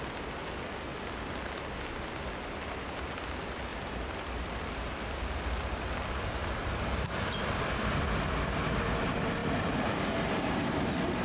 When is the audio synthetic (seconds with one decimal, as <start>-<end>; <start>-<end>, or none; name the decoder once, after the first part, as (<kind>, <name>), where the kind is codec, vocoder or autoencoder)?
0.9-1.4 (vocoder, BigVGAN v2); 3.7-5.9; 6.4-8.0; 9.4-10.7